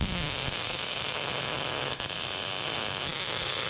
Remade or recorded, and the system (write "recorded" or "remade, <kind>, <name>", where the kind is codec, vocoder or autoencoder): remade, autoencoder, DAC-VAE